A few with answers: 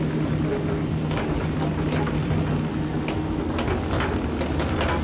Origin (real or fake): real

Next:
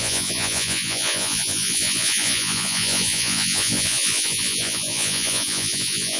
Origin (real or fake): fake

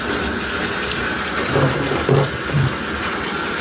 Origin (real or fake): real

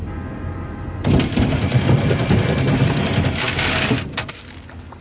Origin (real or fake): real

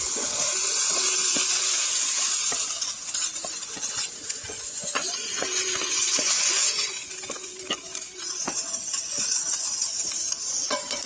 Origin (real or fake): fake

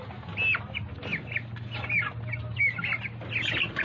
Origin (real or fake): real